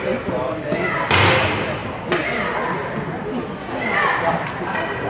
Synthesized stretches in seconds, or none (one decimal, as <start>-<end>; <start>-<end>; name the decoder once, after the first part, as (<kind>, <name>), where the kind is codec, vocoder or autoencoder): none